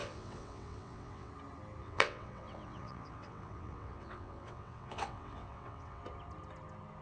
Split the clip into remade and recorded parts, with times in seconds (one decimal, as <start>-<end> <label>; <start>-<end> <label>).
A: 0.0-1.3 remade; 1.3-1.8 recorded; 1.8-6.0 remade; 6.0-7.0 recorded